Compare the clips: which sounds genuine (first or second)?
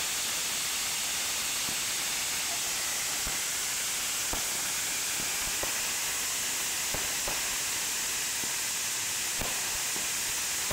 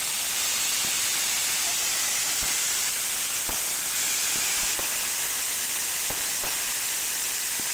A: first